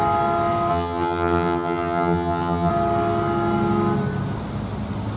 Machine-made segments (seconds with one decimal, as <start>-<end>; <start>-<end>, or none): 0.7-2.7